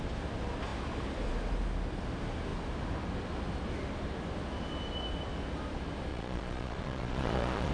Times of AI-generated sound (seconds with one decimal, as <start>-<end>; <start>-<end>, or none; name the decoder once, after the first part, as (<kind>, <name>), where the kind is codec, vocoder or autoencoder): 6.1-7.7 (vocoder, Vocos)